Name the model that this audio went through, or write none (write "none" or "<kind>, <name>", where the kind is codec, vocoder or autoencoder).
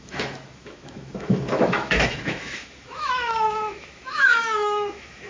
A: autoencoder, DAC-VAE